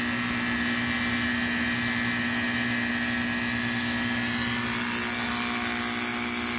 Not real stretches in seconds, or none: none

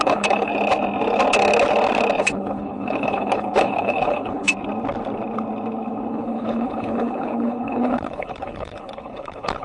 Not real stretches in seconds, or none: 0.0-0.5 (codec, HILCodec); 2.2-4.5; 6.1-9.6

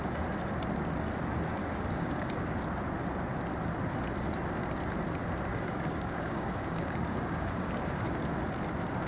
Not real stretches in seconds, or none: 1.6-2.6 (codec, DAC); 5.5-8.4

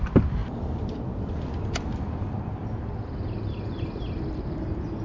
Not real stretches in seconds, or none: none

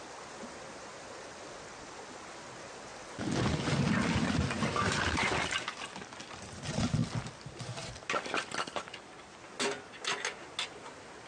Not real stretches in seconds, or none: none

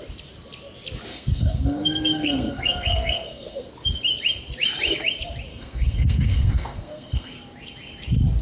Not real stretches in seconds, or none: 1.1-3.7 (codec, SNAC); 5.5-7.3

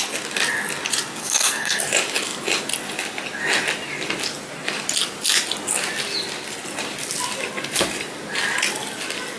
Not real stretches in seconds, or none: 1.2-1.8 (codec, SNAC)

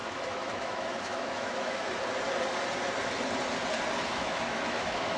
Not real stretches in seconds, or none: 0.0-1.9 (autoencoder, DAC-VAE); 4.1-5.2